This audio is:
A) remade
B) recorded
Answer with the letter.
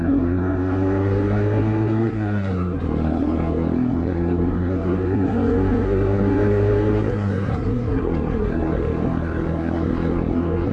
A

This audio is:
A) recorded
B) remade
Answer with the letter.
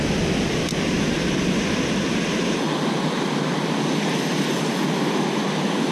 A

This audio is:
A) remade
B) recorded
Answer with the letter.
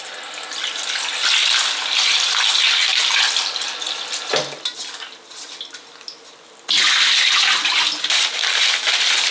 B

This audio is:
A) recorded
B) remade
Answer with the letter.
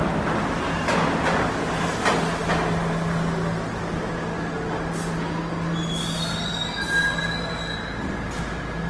A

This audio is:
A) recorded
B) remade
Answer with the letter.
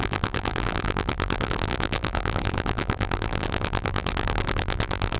B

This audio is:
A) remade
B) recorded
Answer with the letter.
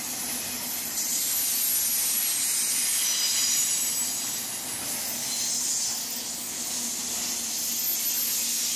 B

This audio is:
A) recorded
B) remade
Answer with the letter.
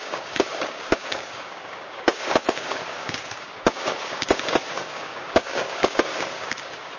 B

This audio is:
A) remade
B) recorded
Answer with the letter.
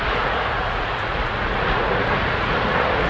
A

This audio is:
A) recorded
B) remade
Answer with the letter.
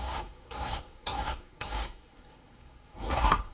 B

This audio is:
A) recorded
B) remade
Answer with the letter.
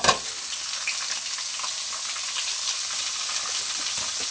A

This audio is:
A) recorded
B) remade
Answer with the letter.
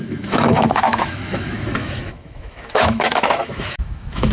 B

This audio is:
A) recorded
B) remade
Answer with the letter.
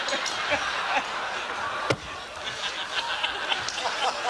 A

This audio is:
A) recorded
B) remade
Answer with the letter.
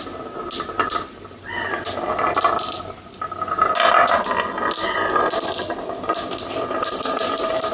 A